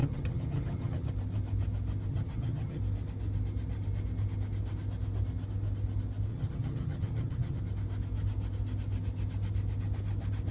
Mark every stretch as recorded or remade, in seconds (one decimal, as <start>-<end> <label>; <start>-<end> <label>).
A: 0.0-1.1 remade; 1.1-2.1 recorded; 2.1-2.8 remade; 2.8-6.3 recorded; 6.3-7.6 remade; 7.6-10.5 recorded